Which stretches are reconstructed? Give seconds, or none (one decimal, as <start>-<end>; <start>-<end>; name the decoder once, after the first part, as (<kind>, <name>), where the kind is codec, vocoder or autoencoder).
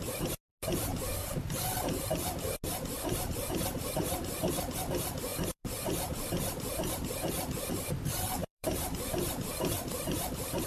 5.3-6.9 (vocoder, BigVGAN v2); 8.4-10.7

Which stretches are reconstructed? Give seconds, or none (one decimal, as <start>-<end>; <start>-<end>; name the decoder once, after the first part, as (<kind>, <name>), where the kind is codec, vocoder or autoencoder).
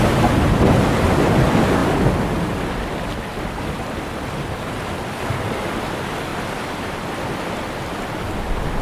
6.3-7.0 (vocoder, BigVGAN v2)